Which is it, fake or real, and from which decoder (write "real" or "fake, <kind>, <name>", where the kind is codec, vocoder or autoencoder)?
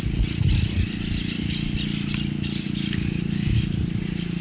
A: real